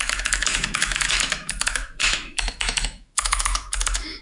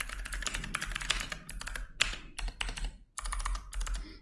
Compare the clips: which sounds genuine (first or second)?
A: second